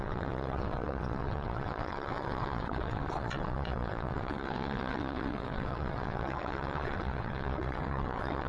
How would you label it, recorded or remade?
remade